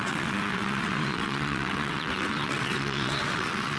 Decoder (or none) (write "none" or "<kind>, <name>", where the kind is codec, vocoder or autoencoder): vocoder, WaveNeXt